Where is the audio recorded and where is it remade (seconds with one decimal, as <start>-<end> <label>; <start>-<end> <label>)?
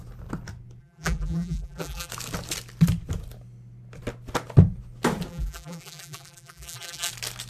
0.0-0.8 recorded; 0.8-2.1 remade; 2.1-5.3 recorded; 5.3-7.1 remade; 7.1-7.5 recorded